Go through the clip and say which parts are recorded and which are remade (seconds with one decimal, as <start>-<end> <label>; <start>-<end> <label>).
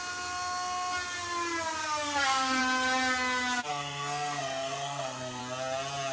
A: 0.0-1.8 recorded; 1.8-2.6 remade; 2.6-3.7 recorded; 3.7-5.4 remade; 5.4-6.1 recorded